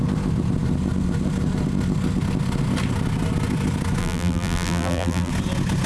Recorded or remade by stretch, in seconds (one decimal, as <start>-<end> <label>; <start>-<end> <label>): 0.0-4.0 recorded; 4.0-5.3 remade; 5.3-5.9 recorded